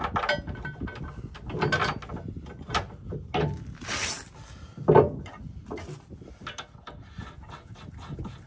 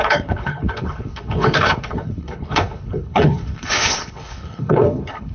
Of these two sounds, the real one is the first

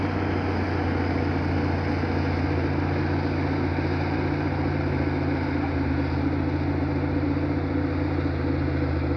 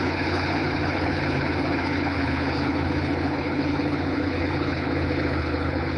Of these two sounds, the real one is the first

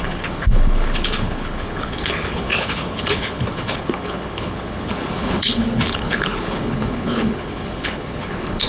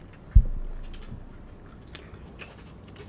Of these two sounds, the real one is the second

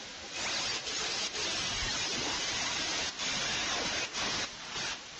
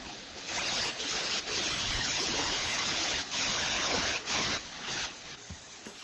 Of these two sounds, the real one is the first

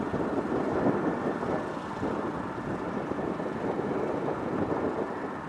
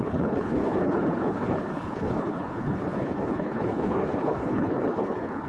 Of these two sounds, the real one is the first